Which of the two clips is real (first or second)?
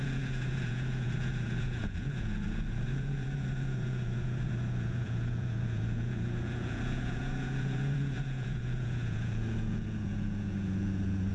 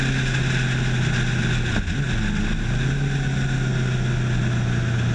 second